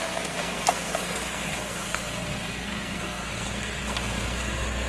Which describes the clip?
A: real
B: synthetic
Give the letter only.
B